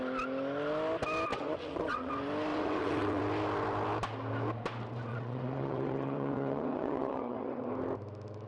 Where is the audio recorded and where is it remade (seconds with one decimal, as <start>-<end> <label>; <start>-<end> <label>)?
0.0-1.3 recorded; 1.3-2.1 remade; 2.1-2.5 recorded; 2.5-3.2 remade; 3.2-5.1 recorded; 5.1-7.7 remade; 7.7-8.5 recorded